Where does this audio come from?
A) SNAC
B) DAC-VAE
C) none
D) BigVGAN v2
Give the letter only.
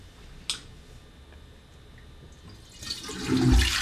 C